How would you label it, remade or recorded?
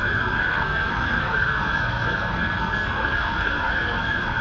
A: remade